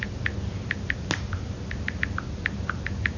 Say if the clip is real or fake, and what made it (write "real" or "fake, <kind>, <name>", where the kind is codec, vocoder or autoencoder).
real